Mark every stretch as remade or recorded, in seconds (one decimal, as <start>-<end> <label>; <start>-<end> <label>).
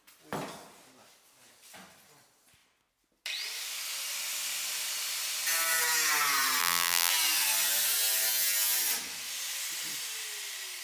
0.0-6.6 recorded; 6.6-7.1 remade; 7.1-10.8 recorded